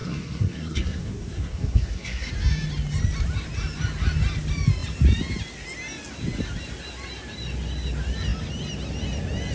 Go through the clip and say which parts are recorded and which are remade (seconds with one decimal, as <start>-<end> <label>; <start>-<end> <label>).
0.0-2.3 remade; 2.3-9.5 recorded